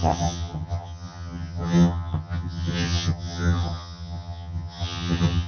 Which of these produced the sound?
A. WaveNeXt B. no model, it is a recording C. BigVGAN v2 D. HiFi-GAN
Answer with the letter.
D